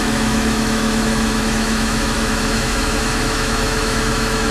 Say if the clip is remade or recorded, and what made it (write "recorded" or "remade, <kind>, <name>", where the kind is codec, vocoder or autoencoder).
remade, autoencoder, DAC-VAE